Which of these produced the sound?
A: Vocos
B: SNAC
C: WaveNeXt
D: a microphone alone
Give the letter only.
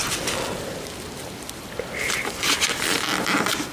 D